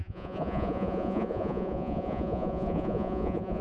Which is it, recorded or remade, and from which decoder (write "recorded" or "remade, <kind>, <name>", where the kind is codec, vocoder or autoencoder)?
remade, vocoder, Vocos